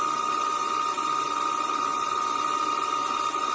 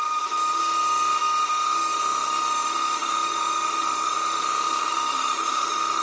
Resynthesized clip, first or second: second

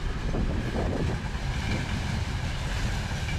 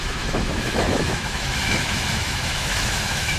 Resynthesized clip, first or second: second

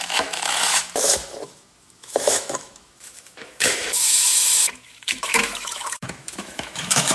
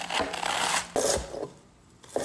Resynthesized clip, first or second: first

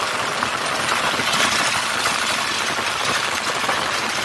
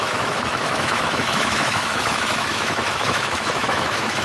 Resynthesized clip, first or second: second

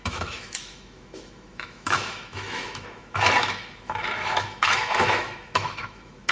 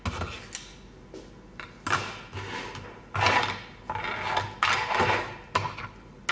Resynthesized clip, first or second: first